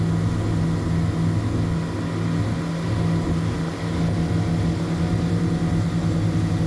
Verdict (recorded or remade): recorded